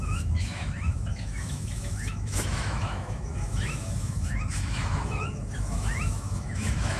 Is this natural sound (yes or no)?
no